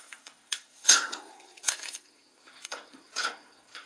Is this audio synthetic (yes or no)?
yes